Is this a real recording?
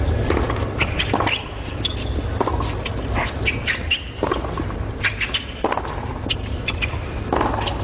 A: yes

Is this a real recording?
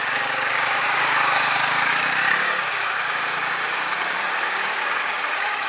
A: no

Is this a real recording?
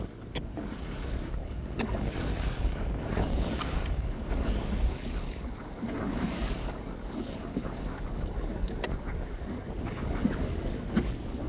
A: no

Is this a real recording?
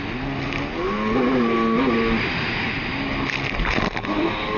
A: yes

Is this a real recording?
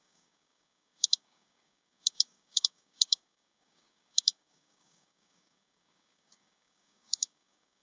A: no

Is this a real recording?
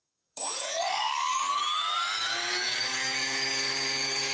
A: no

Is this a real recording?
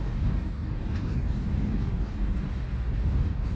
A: no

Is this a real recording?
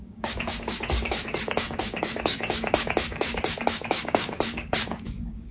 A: no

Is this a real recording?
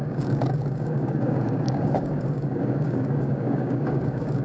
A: no